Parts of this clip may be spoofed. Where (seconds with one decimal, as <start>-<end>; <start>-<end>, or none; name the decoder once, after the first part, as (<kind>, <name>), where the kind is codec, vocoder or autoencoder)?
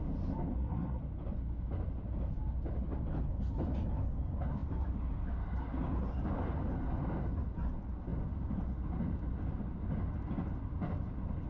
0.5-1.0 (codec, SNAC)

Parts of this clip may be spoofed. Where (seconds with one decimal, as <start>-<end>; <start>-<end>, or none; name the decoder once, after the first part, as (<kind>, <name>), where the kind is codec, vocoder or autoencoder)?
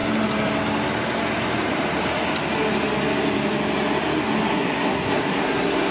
4.5-5.9 (codec, SNAC)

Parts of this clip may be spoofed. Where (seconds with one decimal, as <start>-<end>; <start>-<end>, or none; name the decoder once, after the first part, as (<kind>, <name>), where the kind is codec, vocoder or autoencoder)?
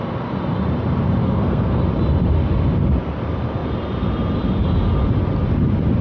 1.2-1.8 (codec, SNAC)